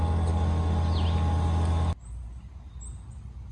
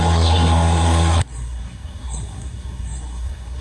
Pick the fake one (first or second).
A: second